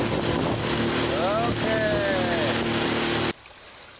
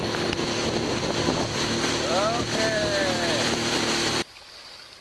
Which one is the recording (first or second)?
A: first